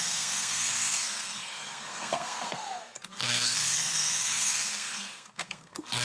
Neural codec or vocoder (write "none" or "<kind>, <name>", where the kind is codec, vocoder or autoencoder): codec, SNAC